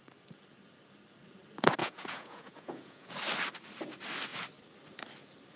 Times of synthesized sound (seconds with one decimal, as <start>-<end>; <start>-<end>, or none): 1.8-3.1